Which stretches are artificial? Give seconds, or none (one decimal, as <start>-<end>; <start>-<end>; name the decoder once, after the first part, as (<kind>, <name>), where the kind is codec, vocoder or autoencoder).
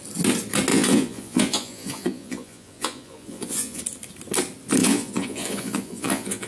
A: 0.7-3.8 (vocoder, Vocos); 4.8-6.5